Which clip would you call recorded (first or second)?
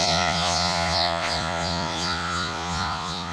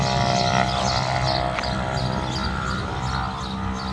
second